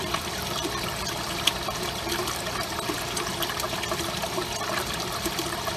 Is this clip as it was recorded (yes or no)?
no